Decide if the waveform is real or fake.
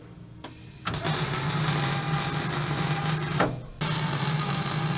real